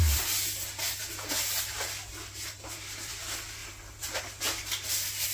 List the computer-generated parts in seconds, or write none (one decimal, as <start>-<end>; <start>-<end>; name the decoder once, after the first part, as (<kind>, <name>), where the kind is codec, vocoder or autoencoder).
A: 0.0-3.2 (vocoder, BigVGAN v2); 3.6-4.2